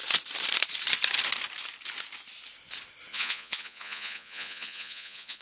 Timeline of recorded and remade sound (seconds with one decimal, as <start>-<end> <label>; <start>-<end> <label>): 0.0-3.1 recorded; 3.1-5.4 remade